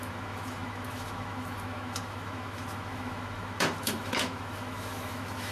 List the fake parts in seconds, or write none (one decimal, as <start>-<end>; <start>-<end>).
0.0-5.5